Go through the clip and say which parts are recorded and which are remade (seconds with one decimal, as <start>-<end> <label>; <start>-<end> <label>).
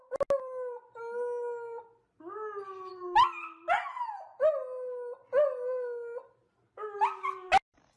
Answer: 0.0-8.0 recorded